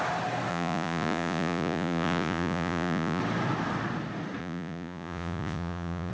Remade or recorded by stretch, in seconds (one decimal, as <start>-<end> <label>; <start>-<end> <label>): 0.0-0.5 recorded; 0.5-3.2 remade; 3.2-4.4 recorded; 4.4-6.1 remade